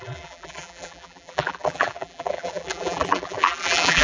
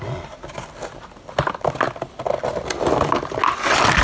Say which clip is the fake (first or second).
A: first